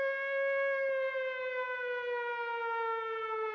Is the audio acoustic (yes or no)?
yes